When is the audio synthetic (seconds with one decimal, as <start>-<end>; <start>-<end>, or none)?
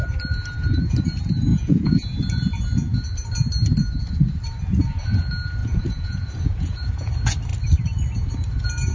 1.5-2.2; 5.6-7.1